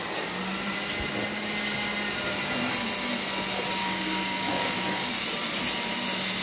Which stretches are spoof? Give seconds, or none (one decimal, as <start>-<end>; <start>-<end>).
3.8-5.1

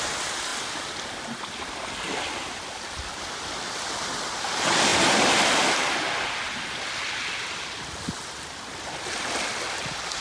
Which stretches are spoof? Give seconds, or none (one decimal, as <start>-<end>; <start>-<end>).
none

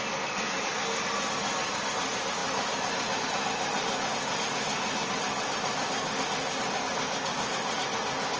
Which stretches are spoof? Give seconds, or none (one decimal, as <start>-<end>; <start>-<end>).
5.0-6.9

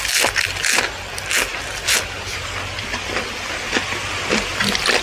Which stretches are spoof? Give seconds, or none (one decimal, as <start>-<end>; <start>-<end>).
1.5-4.5

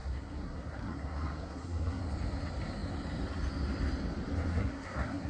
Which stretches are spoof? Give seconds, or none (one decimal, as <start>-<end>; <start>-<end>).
0.0-2.0; 4.5-5.3